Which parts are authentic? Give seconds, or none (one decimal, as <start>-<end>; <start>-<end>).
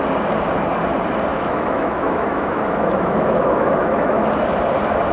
0.0-1.3; 4.3-5.1